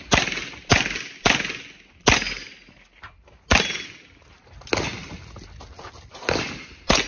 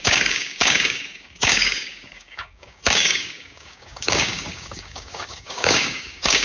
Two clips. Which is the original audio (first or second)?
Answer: first